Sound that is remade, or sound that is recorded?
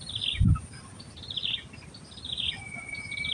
recorded